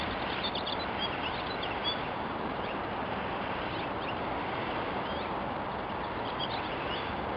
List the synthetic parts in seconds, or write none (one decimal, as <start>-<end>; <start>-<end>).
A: 1.8-4.2